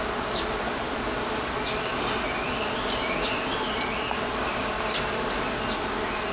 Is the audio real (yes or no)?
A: yes